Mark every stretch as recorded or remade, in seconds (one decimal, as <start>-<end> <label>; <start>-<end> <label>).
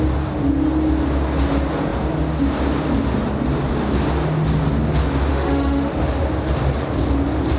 0.0-5.3 recorded; 5.3-6.1 remade; 6.1-7.6 recorded